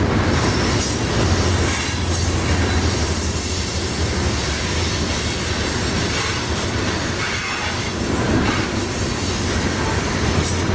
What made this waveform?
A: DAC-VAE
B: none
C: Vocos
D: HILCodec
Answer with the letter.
B